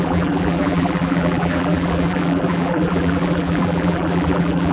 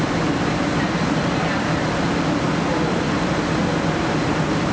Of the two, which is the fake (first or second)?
first